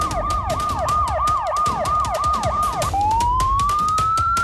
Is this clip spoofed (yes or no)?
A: yes